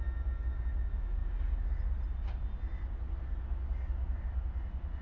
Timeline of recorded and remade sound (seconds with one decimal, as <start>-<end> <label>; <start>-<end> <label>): 0.0-5.0 recorded